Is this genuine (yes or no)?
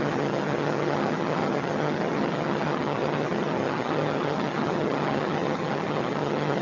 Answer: no